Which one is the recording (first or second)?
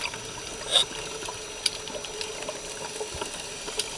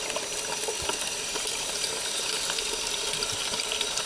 first